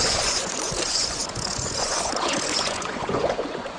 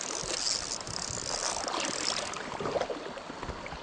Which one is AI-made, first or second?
first